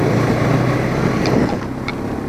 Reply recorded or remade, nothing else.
recorded